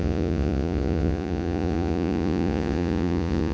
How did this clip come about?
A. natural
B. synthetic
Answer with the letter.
B